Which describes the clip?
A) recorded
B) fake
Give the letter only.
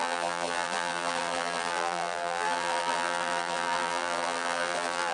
B